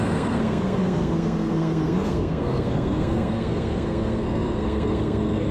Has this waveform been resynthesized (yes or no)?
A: yes